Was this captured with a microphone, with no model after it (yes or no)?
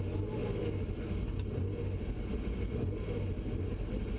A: yes